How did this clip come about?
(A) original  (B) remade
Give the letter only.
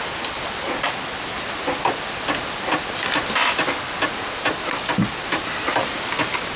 A